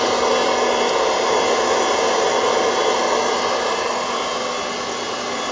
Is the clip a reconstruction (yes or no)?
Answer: no